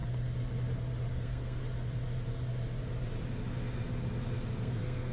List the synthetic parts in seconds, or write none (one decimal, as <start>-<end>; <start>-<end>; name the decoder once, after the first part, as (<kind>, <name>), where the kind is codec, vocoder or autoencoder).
1.1-1.6 (codec, SNAC); 4.6-5.1